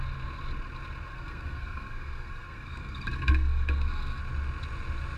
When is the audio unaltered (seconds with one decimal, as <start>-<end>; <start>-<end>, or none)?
0.0-1.1; 4.2-5.2